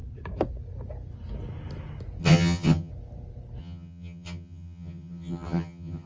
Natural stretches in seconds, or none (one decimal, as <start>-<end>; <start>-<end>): 0.0-2.2; 2.9-3.6